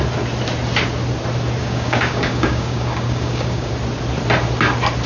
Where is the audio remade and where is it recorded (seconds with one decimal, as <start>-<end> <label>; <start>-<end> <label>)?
0.0-1.6 recorded; 1.6-3.7 remade; 3.7-5.1 recorded